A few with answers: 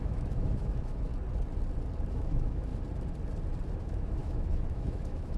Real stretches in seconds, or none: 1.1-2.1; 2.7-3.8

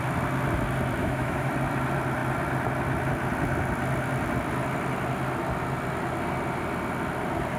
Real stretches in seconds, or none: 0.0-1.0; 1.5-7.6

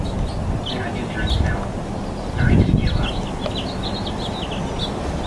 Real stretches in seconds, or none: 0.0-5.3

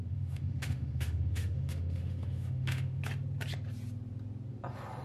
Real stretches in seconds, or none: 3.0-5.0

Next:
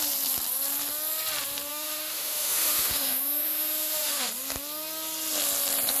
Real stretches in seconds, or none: 0.0-1.7; 4.3-6.0